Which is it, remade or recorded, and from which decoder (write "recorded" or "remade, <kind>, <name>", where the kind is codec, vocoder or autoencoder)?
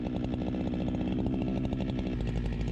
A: recorded